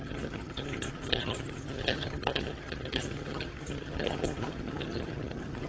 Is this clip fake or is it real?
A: fake